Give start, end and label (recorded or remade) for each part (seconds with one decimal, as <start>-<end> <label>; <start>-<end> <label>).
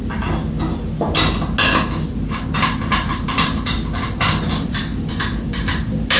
0.0-3.1 recorded; 3.1-6.2 remade